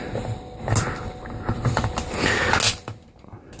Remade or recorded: recorded